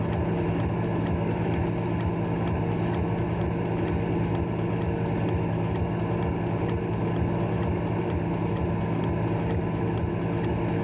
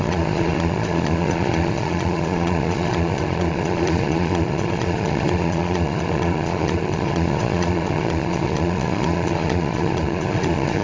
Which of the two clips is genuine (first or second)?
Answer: first